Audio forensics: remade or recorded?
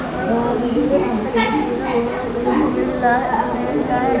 recorded